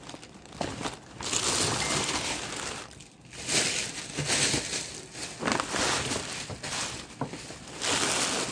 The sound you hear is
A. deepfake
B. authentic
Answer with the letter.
B